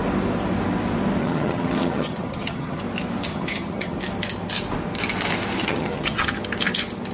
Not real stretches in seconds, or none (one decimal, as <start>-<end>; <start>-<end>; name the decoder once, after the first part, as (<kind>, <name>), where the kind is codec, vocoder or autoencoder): 1.2-2.8 (vocoder, HiFi-GAN); 3.3-4.0; 5.6-6.4